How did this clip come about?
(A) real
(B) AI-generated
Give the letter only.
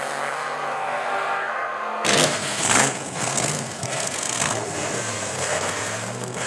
B